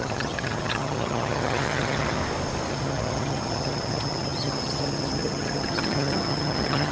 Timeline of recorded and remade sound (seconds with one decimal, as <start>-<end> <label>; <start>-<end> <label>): 0.0-2.2 remade; 2.2-2.7 recorded; 2.7-6.9 remade